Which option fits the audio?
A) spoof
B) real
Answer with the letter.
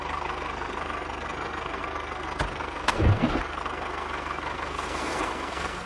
A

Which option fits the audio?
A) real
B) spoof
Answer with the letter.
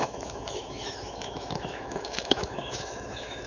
B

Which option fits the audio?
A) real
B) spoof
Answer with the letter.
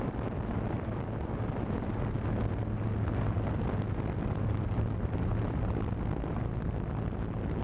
A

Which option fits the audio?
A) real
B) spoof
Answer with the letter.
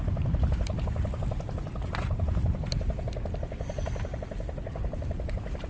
A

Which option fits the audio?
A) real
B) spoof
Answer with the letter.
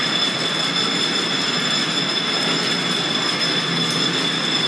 A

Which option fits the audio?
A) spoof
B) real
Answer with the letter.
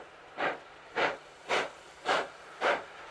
B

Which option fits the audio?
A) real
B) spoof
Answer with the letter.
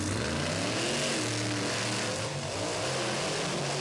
A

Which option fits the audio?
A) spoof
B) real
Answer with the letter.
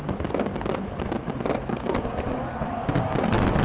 B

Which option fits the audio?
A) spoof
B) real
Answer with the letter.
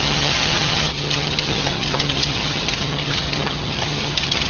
A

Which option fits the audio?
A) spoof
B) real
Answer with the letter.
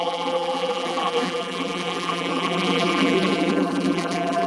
A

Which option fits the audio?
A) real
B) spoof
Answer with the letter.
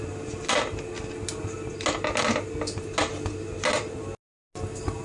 A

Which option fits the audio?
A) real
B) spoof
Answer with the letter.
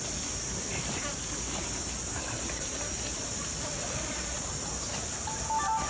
A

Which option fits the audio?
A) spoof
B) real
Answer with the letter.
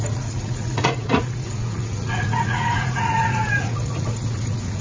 A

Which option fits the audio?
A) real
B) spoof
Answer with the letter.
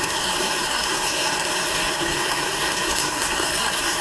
B